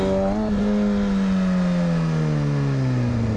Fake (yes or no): no